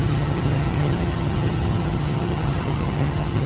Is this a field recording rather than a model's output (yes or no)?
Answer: no